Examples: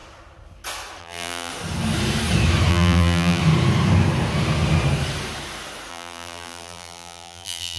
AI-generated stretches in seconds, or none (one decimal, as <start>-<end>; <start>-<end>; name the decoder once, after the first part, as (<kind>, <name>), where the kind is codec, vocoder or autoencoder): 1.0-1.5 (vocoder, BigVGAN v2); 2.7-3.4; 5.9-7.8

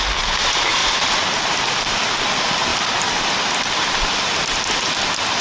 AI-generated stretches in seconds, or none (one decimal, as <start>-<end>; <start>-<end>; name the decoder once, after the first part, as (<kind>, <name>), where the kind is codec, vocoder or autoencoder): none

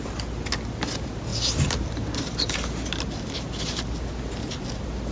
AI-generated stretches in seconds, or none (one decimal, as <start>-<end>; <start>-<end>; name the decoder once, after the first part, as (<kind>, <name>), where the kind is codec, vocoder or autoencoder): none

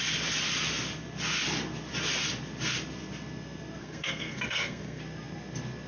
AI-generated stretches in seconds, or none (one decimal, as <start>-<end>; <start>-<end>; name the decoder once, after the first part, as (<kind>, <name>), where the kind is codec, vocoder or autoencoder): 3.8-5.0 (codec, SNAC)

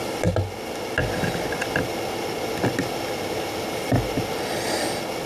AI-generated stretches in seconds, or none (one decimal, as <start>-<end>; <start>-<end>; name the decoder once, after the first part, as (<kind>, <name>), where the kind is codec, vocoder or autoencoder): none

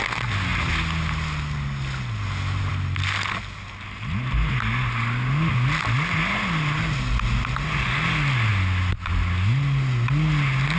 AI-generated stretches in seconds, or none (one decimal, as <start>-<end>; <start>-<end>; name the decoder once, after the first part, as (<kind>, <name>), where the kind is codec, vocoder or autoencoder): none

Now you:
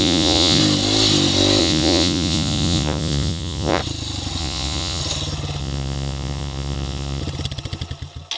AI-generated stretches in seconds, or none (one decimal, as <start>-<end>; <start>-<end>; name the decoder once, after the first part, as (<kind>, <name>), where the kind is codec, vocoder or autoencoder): 0.0-0.6 (vocoder, Vocos); 1.6-3.8; 4.4-5.0; 5.6-7.2

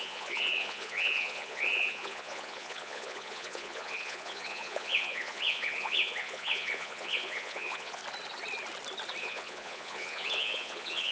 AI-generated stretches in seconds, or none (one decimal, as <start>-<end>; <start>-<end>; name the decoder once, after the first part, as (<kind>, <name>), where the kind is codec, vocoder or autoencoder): 0.0-8.0 (vocoder, Vocos); 9.2-11.1